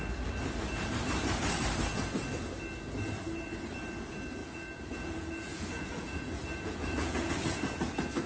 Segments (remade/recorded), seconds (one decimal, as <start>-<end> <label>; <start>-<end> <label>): 0.0-4.4 recorded; 4.4-7.3 remade; 7.3-8.3 recorded